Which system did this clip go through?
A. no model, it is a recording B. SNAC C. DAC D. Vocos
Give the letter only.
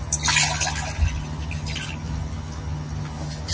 A